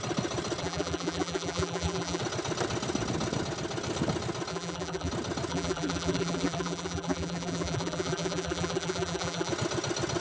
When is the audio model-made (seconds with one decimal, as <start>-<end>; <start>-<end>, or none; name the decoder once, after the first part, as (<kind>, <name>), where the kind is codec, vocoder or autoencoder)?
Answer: 0.6-2.2 (vocoder, BigVGAN v2); 4.5-5.1; 5.5-9.5